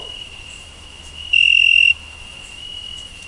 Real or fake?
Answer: fake